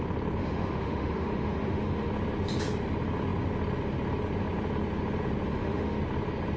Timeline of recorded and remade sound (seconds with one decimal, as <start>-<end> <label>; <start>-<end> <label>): 0.0-0.4 recorded; 0.4-2.1 remade; 2.1-5.5 recorded; 5.5-6.0 remade; 6.0-6.6 recorded